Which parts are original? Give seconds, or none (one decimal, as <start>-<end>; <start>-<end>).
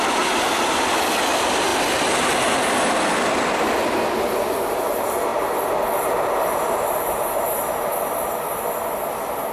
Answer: 0.0-9.5